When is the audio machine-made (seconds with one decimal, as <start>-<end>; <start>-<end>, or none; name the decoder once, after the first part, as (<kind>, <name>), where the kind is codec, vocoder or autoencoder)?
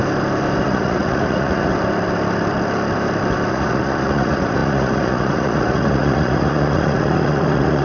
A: 0.6-1.7 (vocoder, Vocos); 3.5-7.8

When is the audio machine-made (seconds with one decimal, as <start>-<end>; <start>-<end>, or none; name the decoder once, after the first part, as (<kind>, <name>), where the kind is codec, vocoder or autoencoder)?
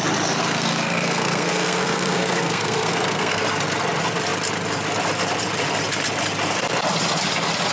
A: 0.4-3.4 (codec, SNAC)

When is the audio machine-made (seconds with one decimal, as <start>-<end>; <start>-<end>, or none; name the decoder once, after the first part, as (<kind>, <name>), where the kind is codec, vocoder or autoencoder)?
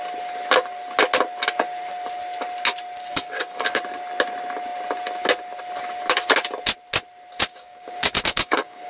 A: 3.0-3.8 (codec, DAC); 7.5-8.9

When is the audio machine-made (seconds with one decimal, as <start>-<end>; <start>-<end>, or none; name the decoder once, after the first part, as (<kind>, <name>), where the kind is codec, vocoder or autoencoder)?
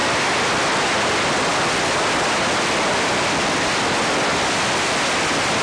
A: none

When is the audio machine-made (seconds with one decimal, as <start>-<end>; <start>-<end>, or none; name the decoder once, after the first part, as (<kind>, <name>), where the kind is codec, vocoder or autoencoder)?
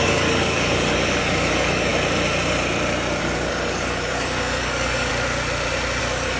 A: 0.0-1.9 (codec, DAC); 3.2-5.1; 6.0-6.4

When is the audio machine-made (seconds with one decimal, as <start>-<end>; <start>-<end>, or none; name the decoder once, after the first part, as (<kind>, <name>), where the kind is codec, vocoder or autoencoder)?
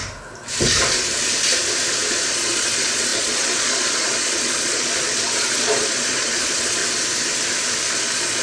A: 2.3-6.8 (vocoder, Vocos); 7.9-8.4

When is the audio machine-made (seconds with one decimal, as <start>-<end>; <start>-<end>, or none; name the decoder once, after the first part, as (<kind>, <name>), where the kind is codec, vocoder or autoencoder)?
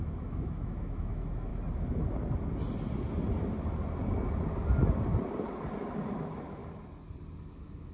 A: 0.0-1.5 (autoencoder, DAC-VAE); 6.1-6.6; 7.4-7.9